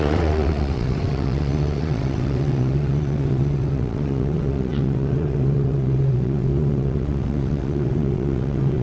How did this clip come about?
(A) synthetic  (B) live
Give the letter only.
A